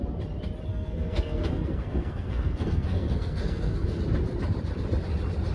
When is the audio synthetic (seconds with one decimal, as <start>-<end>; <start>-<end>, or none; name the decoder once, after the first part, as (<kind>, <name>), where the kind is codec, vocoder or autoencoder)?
0.7-4.0 (codec, SNAC)